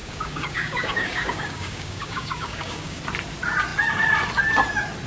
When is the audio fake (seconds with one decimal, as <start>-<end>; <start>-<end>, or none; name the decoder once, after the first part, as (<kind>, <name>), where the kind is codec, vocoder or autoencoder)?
0.0-3.0 (codec, DAC)